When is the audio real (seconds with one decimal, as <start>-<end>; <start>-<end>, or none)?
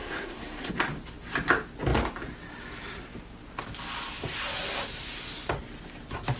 0.7-6.4